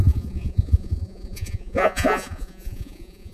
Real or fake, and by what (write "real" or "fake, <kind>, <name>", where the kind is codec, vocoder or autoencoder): fake, vocoder, Vocos